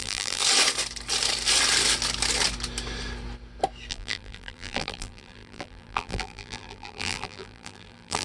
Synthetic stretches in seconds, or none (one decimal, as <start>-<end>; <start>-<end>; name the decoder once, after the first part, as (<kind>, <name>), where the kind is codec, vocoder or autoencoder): 0.0-0.4 (vocoder, BigVGAN v2); 3.9-8.2